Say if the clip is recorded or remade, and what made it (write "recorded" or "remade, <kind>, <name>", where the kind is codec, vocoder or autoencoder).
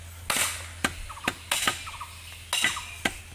recorded